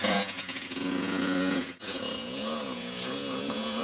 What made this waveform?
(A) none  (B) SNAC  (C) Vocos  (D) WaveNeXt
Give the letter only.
C